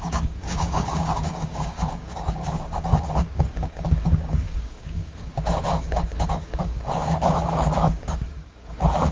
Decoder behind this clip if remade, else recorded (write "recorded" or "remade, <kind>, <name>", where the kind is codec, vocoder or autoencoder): remade, codec, DAC